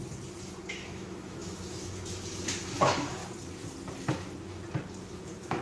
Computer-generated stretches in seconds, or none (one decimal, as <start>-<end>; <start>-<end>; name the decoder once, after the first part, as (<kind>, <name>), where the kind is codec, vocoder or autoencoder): 0.7-3.2 (autoencoder, DAC-VAE); 5.0-5.6